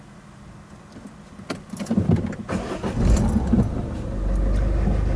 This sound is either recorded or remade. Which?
recorded